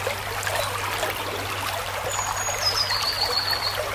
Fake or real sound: real